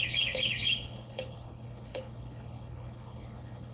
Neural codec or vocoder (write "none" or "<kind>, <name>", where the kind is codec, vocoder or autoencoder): codec, HILCodec